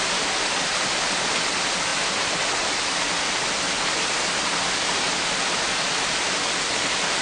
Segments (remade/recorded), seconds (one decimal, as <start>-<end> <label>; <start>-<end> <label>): 0.0-7.2 recorded